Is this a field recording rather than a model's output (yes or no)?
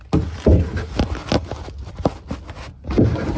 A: yes